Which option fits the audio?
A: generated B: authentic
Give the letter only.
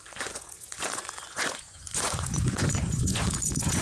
A